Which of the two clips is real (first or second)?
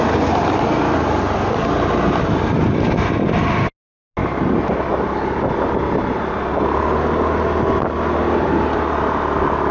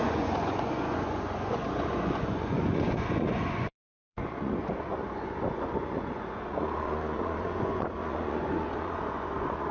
first